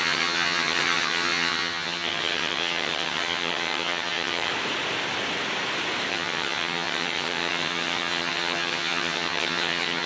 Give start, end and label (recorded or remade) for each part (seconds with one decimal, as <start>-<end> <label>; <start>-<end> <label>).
0.0-4.5 remade; 4.5-6.1 recorded; 6.1-10.1 remade